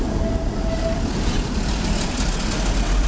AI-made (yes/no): no